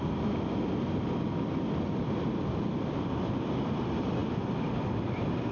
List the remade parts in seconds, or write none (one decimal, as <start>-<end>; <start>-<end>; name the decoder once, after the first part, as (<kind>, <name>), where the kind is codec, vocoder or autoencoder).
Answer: none